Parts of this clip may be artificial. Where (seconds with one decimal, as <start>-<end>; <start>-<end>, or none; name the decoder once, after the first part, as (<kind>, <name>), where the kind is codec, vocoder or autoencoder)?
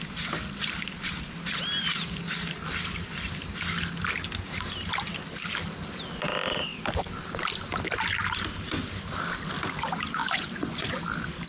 10.2-11.0 (vocoder, Vocos)